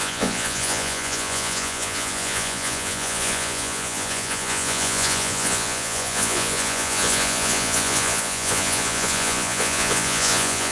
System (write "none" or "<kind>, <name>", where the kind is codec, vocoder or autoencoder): vocoder, Vocos